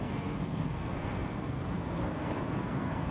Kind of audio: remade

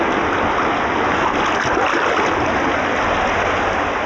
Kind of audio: recorded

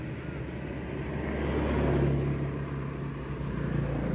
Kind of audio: recorded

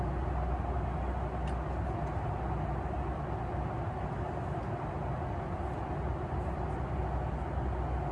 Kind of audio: recorded